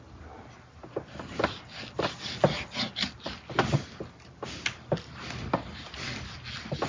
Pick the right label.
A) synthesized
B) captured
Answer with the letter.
B